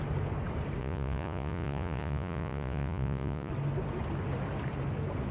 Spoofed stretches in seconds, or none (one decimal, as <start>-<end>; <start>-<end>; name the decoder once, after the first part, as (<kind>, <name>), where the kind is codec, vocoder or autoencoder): 0.8-3.5 (vocoder, Vocos)